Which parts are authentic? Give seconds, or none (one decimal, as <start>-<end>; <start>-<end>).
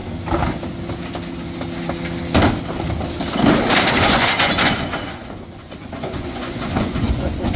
0.0-4.0